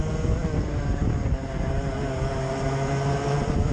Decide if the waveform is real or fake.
real